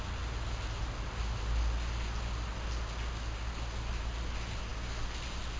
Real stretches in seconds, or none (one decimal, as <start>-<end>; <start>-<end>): 0.0-5.6